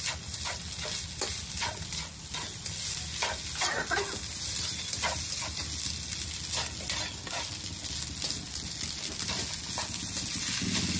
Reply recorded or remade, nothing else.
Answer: recorded